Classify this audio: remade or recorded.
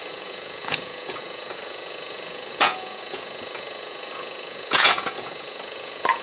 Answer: remade